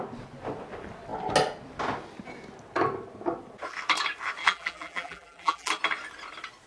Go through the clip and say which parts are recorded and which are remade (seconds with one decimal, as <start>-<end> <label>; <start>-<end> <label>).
0.0-4.4 recorded; 4.4-5.7 remade; 5.7-6.7 recorded